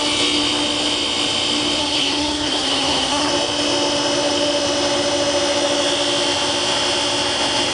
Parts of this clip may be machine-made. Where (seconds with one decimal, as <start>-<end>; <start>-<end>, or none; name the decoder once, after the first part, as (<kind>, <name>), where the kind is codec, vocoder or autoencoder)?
1.8-3.3 (codec, SNAC)